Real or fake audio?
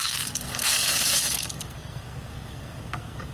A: fake